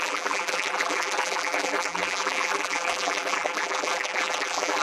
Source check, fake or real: fake